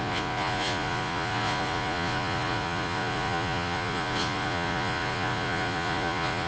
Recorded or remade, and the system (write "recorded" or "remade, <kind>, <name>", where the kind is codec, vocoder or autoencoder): remade, vocoder, Vocos